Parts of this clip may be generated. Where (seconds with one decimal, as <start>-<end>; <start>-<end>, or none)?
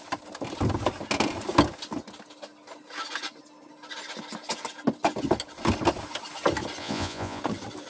6.8-7.4